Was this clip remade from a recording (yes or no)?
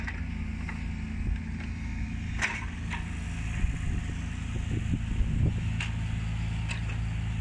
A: no